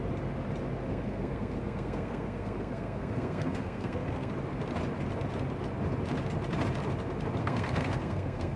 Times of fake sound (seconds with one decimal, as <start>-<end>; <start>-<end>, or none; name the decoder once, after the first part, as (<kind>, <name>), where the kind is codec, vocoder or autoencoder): 0.9-4.3 (codec, SNAC); 7.4-8.6